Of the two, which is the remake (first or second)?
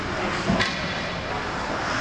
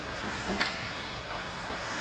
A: second